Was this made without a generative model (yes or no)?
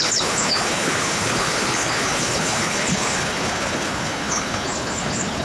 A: no